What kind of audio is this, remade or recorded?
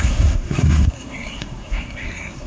remade